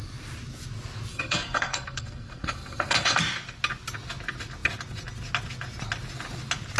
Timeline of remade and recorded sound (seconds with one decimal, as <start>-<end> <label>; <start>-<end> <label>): 0.0-1.1 recorded; 1.1-3.2 remade; 3.2-6.8 recorded